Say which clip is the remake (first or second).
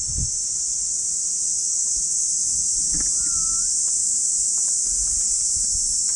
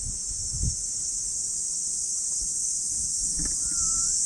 second